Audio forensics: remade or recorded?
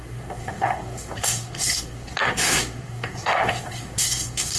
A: remade